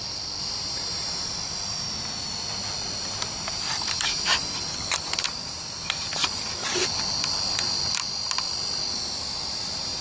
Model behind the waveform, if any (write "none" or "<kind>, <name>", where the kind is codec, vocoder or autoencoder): none